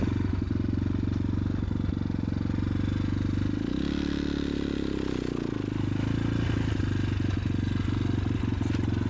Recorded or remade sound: recorded